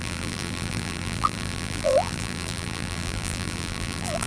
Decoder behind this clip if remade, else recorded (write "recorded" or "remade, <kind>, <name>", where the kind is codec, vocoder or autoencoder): remade, vocoder, BigVGAN v2